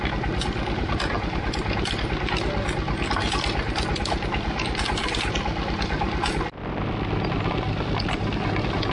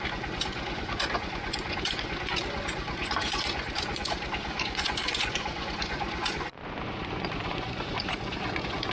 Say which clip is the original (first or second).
first